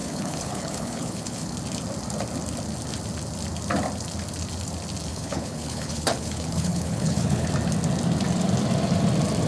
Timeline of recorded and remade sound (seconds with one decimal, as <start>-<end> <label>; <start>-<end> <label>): 0.0-1.5 remade; 1.5-5.1 recorded; 5.1-7.5 remade; 7.5-9.5 recorded